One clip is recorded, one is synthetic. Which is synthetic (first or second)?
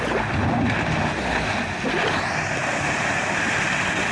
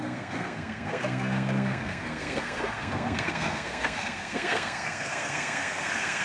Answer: second